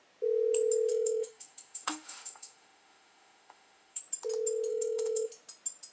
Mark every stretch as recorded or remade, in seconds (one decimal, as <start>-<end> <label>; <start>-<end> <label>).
0.0-0.9 recorded; 0.9-4.0 remade; 4.0-4.7 recorded; 4.7-5.3 remade; 5.3-5.9 recorded